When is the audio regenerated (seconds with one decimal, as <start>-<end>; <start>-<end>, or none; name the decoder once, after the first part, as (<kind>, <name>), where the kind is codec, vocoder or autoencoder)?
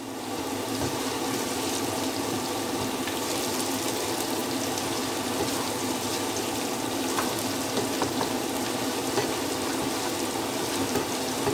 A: none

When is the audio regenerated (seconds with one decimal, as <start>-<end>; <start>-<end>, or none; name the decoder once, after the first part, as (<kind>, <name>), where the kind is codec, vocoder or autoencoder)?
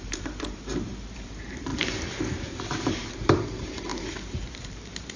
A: 0.0-3.9 (vocoder, BigVGAN v2)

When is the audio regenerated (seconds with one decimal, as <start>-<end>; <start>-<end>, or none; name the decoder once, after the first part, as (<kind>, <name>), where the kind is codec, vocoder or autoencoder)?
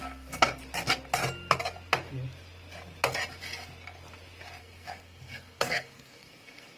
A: 0.0-0.6 (codec, SNAC); 4.6-6.8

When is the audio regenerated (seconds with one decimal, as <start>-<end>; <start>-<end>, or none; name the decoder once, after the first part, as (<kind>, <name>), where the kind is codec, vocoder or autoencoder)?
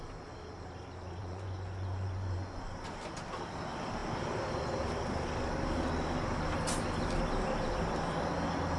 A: 1.2-2.7 (vocoder, Vocos)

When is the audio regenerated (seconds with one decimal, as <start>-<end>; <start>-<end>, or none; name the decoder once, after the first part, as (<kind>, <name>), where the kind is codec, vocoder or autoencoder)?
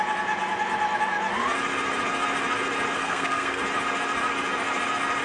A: 3.0-3.6 (codec, SNAC)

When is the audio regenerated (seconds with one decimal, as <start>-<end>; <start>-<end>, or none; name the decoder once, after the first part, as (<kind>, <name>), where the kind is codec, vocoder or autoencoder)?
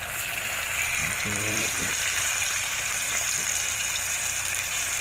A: 1.0-4.0 (vocoder, BigVGAN v2)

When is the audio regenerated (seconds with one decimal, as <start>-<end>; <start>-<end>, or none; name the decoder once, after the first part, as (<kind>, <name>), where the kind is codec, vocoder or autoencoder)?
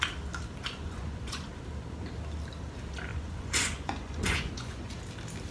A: 0.6-1.5 (vocoder, Vocos); 3.1-4.9